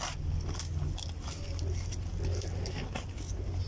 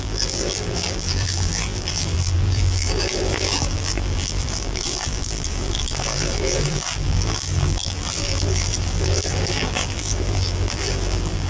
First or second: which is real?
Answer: first